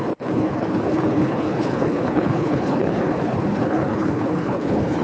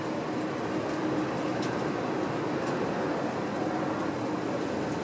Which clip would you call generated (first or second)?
first